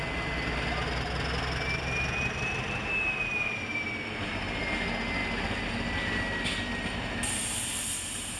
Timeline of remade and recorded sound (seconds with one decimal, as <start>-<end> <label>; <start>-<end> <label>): 0.0-8.4 recorded